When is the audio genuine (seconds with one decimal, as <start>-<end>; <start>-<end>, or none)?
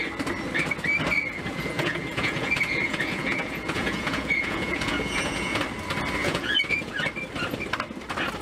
0.0-1.5; 5.6-6.2; 7.0-8.4